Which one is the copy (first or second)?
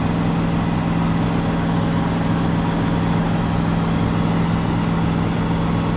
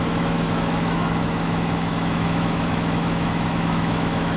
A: second